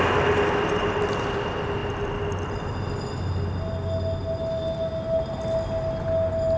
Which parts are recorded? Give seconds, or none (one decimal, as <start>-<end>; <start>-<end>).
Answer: 0.0-6.6